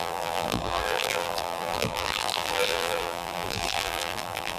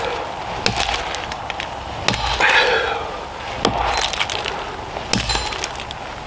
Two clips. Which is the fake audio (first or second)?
first